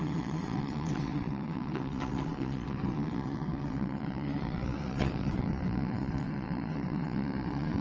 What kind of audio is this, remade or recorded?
remade